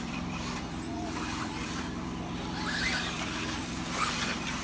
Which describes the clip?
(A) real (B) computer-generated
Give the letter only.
B